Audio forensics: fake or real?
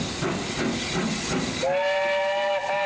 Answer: real